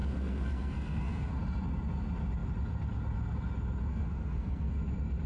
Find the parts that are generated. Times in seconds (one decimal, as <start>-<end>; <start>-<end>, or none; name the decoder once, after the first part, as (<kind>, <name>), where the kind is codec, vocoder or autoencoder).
0.0-1.3 (codec, SNAC); 3.9-4.7